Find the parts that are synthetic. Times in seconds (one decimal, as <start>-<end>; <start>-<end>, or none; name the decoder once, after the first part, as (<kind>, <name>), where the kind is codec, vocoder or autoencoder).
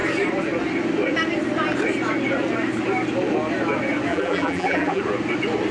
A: 4.1-5.0 (vocoder, BigVGAN v2)